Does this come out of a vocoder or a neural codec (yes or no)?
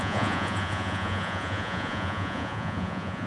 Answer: yes